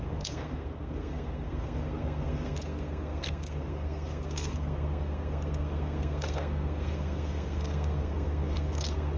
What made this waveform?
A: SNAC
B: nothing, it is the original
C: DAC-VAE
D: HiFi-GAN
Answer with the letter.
A